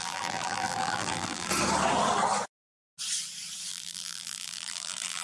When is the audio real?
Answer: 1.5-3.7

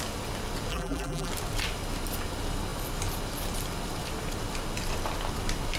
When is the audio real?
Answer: 0.0-0.7; 1.3-5.8

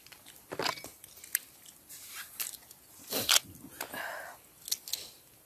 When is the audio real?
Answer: 0.0-5.5

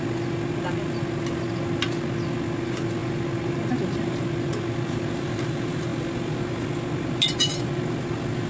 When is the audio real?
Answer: 0.0-8.5

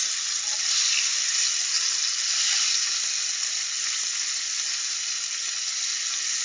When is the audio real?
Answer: 0.0-6.4

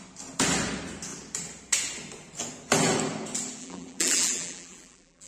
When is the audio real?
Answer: 0.0-3.6